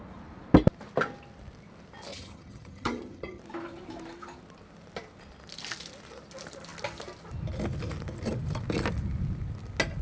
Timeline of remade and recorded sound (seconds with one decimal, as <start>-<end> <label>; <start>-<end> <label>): 0.0-2.1 recorded; 2.1-3.4 remade; 3.4-10.0 recorded

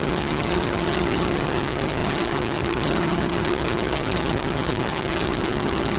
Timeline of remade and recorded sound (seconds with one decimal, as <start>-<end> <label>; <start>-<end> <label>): 0.0-6.0 remade

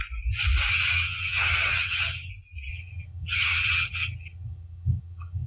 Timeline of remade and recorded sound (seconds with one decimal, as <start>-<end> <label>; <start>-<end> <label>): 0.0-0.7 recorded; 0.7-2.3 remade; 2.3-2.7 recorded; 2.7-5.5 remade

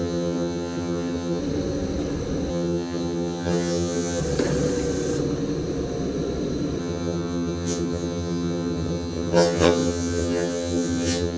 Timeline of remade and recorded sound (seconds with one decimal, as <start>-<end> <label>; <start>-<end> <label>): 0.0-1.4 remade; 1.4-2.5 recorded; 2.5-4.2 remade; 4.2-6.8 recorded; 6.8-11.4 remade

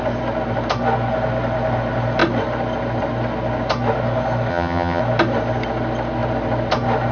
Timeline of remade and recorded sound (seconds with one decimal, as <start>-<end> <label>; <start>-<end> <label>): 0.0-4.5 recorded; 4.5-5.0 remade; 5.0-7.1 recorded

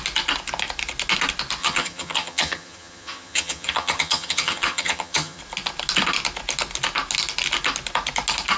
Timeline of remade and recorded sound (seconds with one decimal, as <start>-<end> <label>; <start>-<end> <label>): 0.0-1.6 recorded; 1.6-5.4 remade; 5.4-8.6 recorded

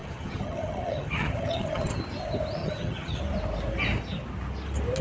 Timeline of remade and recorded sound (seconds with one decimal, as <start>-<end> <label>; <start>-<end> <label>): 0.0-2.0 remade; 2.0-2.6 recorded; 2.6-3.2 remade; 3.2-5.0 recorded